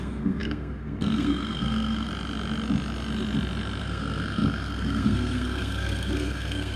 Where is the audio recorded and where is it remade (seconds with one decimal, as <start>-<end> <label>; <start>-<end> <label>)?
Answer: 0.0-2.1 remade; 2.1-3.8 recorded; 3.8-6.8 remade